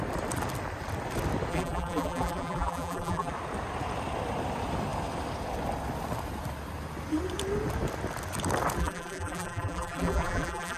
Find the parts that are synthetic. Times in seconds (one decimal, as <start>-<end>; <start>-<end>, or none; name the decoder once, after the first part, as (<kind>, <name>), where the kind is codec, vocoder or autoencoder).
1.5-3.3 (vocoder, BigVGAN v2); 8.8-10.8

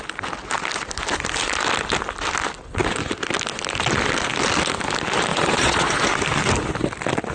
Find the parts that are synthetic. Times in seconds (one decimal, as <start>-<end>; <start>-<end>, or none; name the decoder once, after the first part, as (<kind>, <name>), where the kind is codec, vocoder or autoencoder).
5.3-6.0 (vocoder, Vocos)

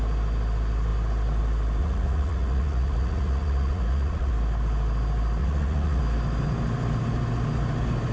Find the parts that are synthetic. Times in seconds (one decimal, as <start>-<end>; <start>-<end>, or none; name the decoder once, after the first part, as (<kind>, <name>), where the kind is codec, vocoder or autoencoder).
1.8-4.3 (vocoder, Vocos); 5.4-6.0

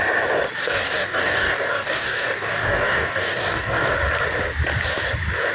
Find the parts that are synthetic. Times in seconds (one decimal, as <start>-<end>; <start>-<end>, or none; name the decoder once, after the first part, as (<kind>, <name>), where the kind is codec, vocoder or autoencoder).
0.6-3.9 (codec, DAC)

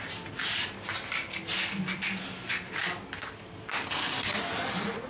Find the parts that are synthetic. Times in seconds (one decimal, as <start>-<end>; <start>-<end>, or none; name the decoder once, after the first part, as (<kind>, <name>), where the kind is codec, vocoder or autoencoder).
none

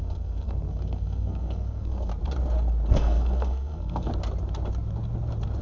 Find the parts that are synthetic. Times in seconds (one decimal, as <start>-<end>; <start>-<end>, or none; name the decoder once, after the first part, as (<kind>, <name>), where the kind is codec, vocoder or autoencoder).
0.0-2.1 (codec, SNAC); 2.9-4.1